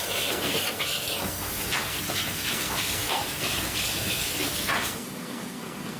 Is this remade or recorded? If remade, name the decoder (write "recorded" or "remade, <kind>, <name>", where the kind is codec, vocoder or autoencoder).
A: remade, codec, SNAC